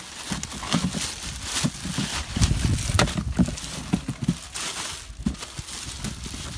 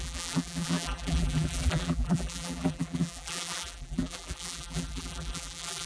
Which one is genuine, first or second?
first